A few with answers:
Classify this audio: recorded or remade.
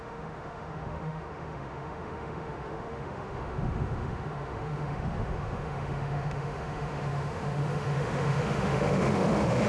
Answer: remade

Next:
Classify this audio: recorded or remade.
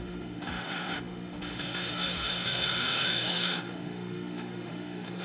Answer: remade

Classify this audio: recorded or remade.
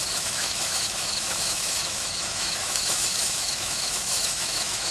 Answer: remade